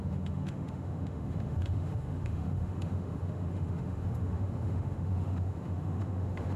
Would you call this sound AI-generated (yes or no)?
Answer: yes